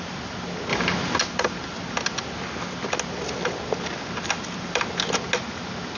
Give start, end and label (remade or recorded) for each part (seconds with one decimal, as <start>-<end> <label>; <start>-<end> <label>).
0.0-6.0 recorded

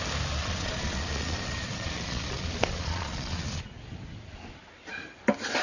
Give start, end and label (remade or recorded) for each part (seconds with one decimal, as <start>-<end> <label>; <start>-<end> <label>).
0.0-0.4 recorded; 0.4-3.8 remade; 3.8-5.6 recorded

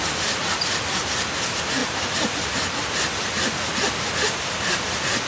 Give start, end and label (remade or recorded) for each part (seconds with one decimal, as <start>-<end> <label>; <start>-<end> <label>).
0.0-5.3 recorded

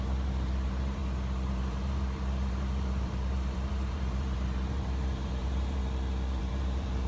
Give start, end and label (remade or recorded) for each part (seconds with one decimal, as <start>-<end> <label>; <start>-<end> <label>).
0.0-1.0 remade; 1.0-1.5 recorded; 1.5-5.8 remade; 5.8-6.4 recorded; 6.4-7.1 remade